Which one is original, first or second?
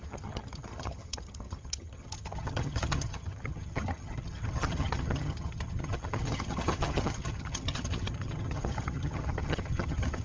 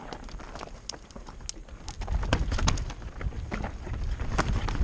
second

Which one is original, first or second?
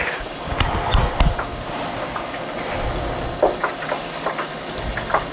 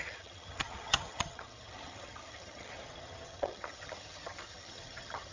first